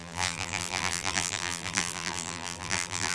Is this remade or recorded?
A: remade